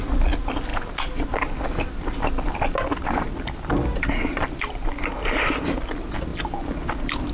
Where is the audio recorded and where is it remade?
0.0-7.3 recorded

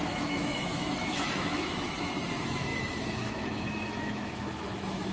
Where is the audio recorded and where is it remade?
0.0-5.1 remade

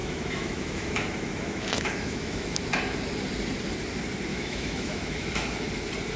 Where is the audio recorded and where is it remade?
0.0-2.6 remade; 2.6-4.3 recorded; 4.3-5.7 remade; 5.7-6.2 recorded